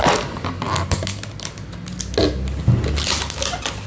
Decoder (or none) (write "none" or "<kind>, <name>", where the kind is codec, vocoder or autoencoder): none